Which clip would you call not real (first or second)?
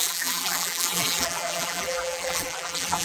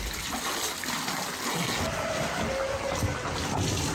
first